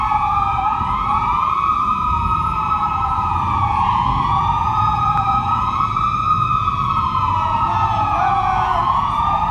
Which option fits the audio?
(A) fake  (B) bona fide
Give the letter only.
A